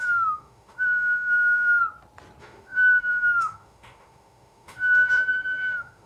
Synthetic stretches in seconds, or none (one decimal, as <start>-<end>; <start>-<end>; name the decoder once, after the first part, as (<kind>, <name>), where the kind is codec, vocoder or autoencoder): 0.0-1.8 (autoencoder, DAC-VAE); 2.4-6.1